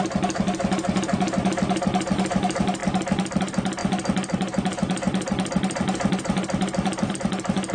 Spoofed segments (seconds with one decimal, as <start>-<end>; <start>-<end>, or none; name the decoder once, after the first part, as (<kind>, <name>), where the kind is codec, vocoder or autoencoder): 2.8-3.4 (vocoder, BigVGAN v2); 3.8-7.1